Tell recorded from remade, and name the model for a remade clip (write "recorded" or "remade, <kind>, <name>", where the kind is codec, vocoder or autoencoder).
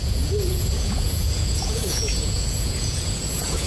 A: remade, vocoder, Vocos